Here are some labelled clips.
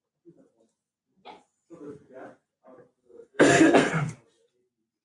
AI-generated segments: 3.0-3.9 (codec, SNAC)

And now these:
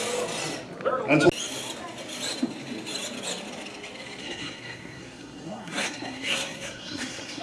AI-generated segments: 4.2-7.4 (codec, SNAC)

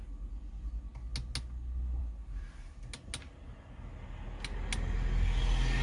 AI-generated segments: none

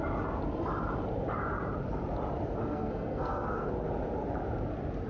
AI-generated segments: 2.6-3.7 (codec, SNAC)

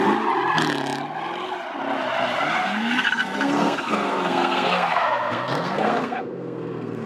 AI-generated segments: 2.6-7.1 (codec, SNAC)

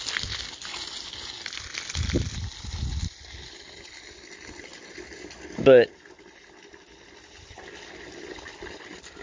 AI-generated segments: none

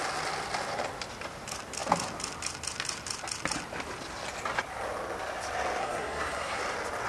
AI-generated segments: 5.8-6.6 (codec, SNAC)

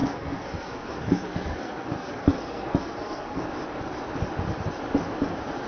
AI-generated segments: 0.0-3.4 (codec, SNAC)